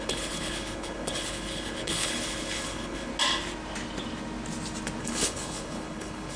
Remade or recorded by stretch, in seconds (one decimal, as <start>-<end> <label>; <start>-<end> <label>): 0.0-3.1 remade; 3.1-5.0 recorded; 5.0-6.4 remade